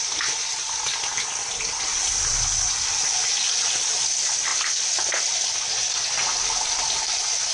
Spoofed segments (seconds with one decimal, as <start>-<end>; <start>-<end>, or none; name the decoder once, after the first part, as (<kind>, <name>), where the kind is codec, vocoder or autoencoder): 2.3-3.0 (vocoder, BigVGAN v2); 6.2-7.5